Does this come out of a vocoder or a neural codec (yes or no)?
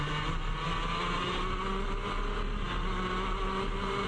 no